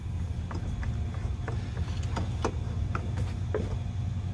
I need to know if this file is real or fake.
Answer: real